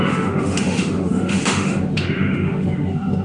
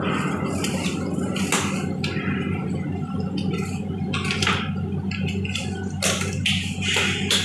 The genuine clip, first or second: second